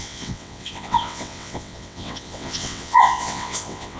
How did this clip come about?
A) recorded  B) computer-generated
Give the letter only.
B